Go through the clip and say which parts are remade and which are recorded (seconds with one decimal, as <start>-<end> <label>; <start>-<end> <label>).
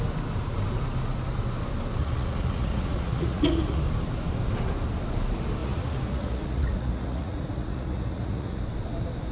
0.0-2.0 recorded; 2.0-3.8 remade; 3.8-5.6 recorded; 5.6-8.6 remade; 8.6-9.3 recorded